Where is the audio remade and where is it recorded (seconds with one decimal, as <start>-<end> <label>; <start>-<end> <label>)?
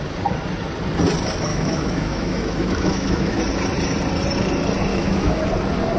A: 0.0-1.5 recorded; 1.5-3.4 remade; 3.4-4.9 recorded; 4.9-5.4 remade; 5.4-6.0 recorded